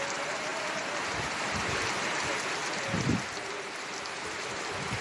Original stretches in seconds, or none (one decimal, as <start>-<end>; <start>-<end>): 0.0-5.0